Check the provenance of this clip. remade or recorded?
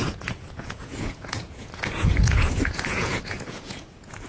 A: remade